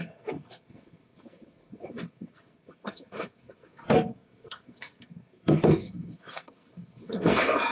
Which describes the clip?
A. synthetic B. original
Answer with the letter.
A